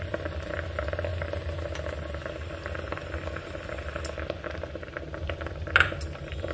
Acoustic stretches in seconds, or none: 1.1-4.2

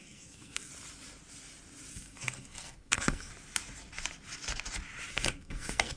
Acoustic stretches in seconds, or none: 0.7-1.9; 3.3-5.1